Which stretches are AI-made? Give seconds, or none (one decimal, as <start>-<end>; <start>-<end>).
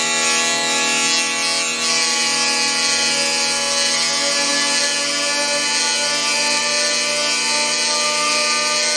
none